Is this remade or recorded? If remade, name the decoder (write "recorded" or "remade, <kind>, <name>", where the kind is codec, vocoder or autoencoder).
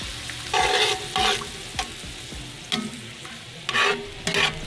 recorded